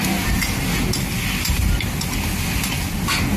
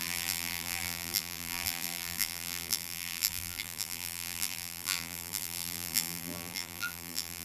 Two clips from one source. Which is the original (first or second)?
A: first